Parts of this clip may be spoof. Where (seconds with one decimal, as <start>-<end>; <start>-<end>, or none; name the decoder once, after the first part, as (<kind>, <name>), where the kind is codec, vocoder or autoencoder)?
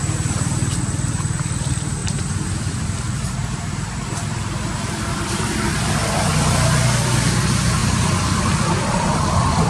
0.0-9.7 (vocoder, BigVGAN v2)